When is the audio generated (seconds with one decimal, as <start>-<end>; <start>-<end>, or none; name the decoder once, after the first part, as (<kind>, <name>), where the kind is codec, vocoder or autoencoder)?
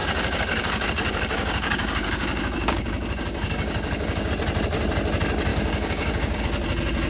0.0-4.3 (codec, DAC); 5.5-6.4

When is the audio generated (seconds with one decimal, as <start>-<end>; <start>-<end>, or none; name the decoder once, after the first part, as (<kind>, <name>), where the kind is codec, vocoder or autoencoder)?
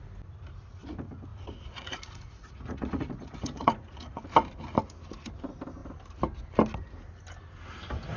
1.3-4.2 (vocoder, Vocos)